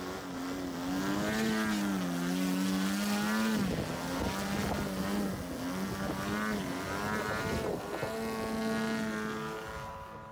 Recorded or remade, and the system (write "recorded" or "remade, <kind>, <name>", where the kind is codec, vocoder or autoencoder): recorded